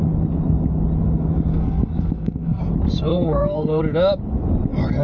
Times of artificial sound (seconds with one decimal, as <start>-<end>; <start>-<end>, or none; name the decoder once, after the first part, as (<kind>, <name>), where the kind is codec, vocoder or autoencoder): 1.5-2.6 (codec, SNAC); 3.1-3.8